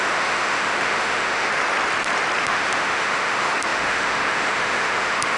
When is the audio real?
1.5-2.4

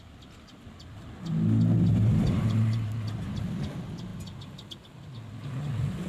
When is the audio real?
0.0-1.9; 3.4-6.1